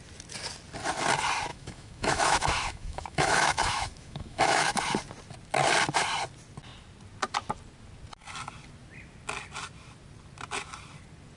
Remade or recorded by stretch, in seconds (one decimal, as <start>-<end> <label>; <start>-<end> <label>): 0.0-1.5 recorded; 1.5-4.8 remade; 4.8-11.4 recorded